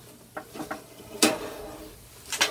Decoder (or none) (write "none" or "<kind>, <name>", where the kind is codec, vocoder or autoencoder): none